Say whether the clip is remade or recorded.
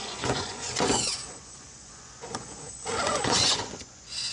remade